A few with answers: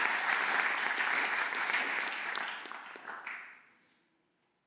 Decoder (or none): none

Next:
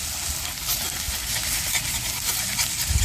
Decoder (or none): none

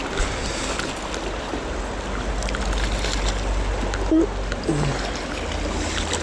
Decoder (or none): none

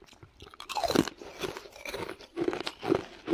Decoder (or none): none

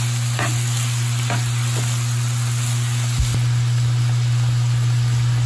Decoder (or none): none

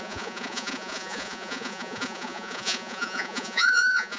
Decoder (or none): vocoder, Vocos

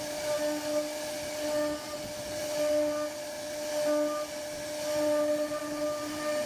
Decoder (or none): none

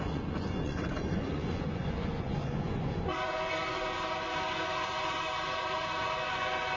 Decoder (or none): vocoder, Vocos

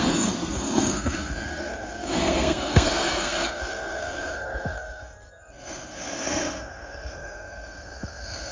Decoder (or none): codec, SNAC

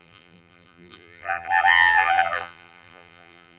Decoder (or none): vocoder, BigVGAN v2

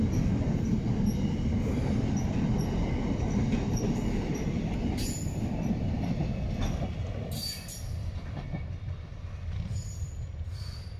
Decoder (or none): none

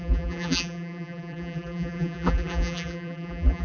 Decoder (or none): vocoder, BigVGAN v2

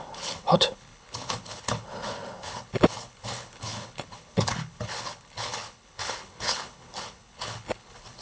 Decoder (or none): codec, HILCodec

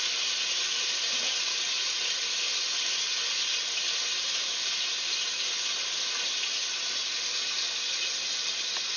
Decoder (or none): none